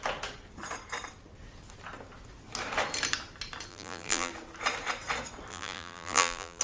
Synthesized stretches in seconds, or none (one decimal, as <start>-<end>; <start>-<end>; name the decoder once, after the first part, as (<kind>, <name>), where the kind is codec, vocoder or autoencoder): 3.7-4.3 (vocoder, BigVGAN v2); 5.5-6.6